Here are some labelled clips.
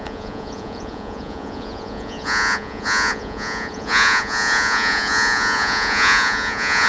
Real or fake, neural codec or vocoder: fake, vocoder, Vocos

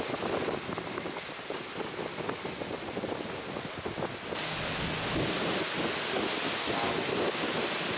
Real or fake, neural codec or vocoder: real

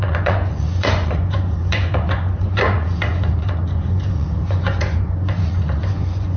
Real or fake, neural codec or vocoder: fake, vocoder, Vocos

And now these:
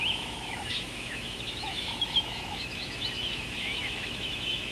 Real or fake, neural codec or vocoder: fake, autoencoder, DAC-VAE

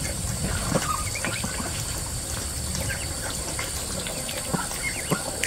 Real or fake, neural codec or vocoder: real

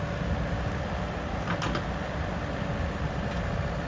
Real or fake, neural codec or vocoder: real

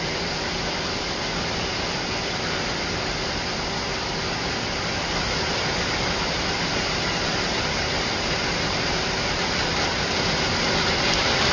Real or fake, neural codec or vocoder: real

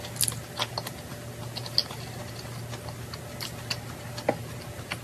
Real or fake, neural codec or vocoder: real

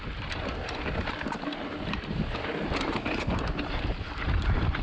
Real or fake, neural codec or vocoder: real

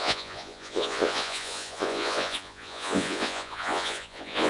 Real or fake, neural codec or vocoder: fake, vocoder, Vocos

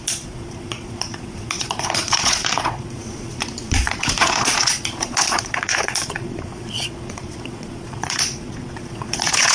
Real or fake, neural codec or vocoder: fake, vocoder, Vocos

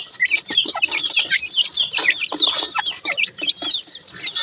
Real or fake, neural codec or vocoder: real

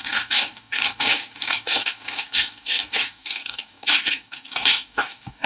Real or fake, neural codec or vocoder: fake, codec, DAC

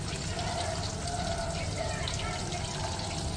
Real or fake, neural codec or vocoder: real